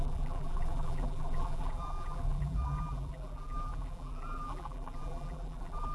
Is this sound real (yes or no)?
no